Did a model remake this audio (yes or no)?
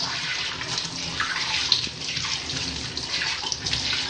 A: no